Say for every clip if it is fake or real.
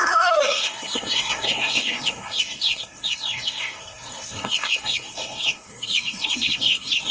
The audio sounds fake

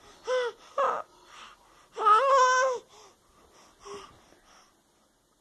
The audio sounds real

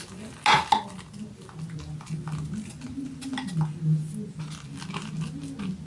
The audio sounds real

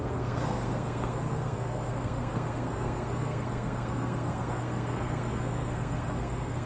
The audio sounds fake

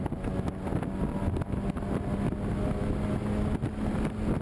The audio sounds real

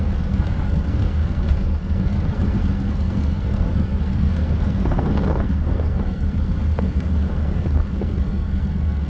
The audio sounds fake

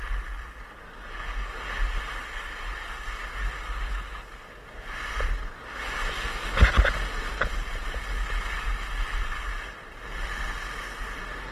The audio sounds real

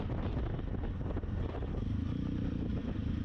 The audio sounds real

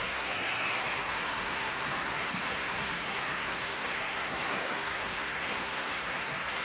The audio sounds fake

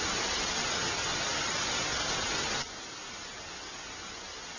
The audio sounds real